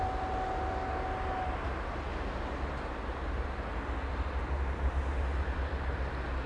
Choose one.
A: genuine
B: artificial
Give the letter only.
A